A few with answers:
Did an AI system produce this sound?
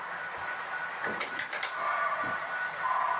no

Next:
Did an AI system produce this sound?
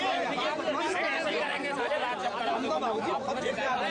no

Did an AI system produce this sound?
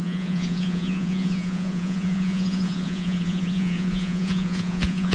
yes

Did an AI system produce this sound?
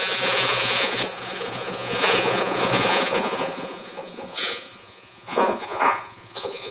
yes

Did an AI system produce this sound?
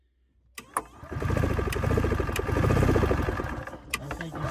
no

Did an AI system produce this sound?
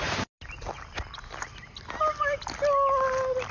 no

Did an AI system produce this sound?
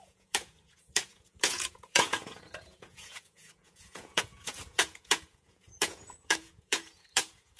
yes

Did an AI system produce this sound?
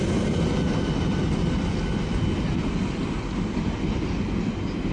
no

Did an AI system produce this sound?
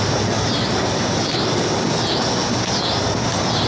no